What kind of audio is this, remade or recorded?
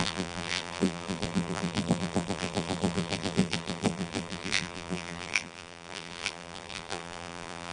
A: remade